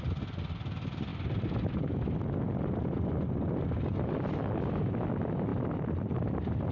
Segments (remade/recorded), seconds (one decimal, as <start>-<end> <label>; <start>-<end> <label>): 0.0-6.7 recorded